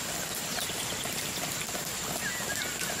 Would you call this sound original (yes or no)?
yes